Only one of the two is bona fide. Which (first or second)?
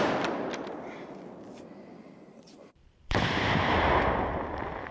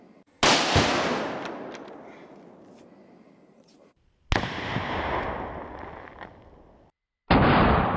second